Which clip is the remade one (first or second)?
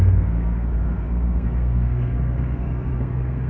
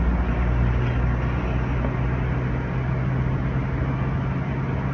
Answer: first